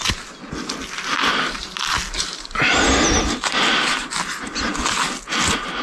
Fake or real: real